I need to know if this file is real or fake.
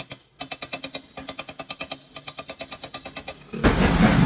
real